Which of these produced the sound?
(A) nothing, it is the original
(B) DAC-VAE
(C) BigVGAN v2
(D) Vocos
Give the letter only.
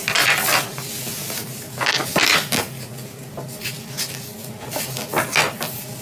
A